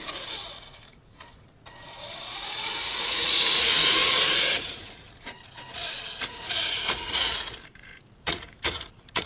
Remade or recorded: remade